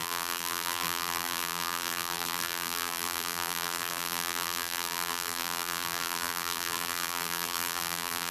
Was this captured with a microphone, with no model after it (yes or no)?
no